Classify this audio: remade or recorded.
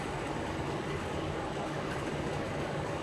remade